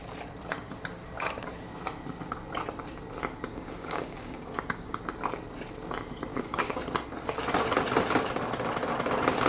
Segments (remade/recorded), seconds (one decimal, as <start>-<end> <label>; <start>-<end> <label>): 0.0-3.5 recorded; 3.5-5.0 remade; 5.0-6.3 recorded; 6.3-6.8 remade; 6.8-9.5 recorded